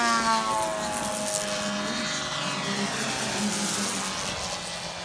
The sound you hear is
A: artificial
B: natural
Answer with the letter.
B